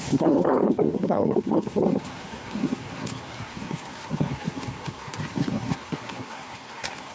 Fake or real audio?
fake